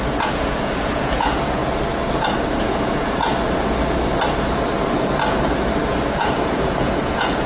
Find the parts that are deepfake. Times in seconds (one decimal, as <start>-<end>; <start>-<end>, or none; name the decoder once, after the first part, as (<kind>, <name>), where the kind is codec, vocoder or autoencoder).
0.0-1.6 (vocoder, Vocos); 2.6-3.3; 6.2-7.5